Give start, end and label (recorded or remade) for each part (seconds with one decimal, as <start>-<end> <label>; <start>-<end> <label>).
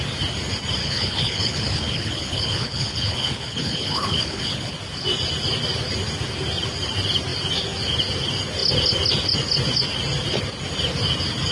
0.0-0.8 recorded; 0.8-4.7 remade; 4.7-11.5 recorded